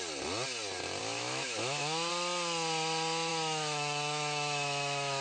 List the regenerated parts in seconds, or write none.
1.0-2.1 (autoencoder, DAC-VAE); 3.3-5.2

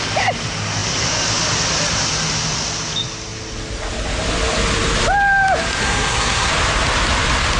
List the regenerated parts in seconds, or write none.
5.8-6.5 (codec, SNAC)

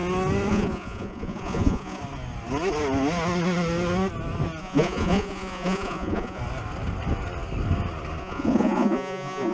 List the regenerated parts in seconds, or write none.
0.5-2.0 (vocoder, Vocos); 4.6-6.4; 8.2-9.5

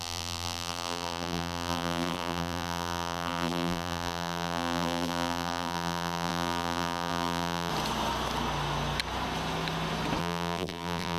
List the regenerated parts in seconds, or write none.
0.0-7.7 (vocoder, BigVGAN v2); 10.2-11.2

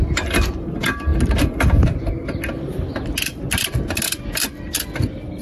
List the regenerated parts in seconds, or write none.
none

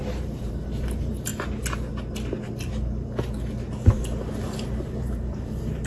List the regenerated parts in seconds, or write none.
0.0-1.3 (vocoder, BigVGAN v2); 4.8-5.9

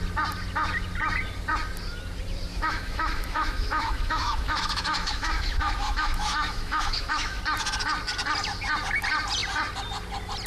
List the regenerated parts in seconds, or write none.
2.5-7.4 (autoencoder, DAC-VAE)

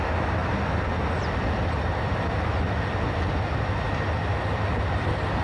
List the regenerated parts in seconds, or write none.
none